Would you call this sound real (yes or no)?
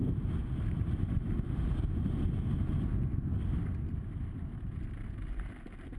yes